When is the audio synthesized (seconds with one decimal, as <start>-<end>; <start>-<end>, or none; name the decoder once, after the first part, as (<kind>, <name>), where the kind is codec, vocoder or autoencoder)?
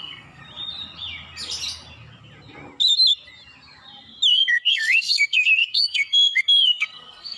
0.0-0.4 (codec, SNAC); 4.3-7.4